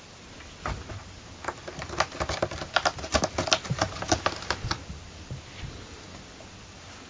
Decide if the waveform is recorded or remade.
recorded